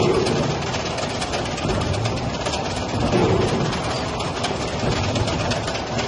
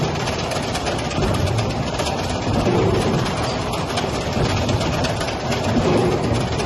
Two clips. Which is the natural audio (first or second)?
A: first